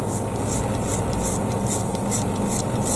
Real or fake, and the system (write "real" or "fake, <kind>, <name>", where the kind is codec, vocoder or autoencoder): real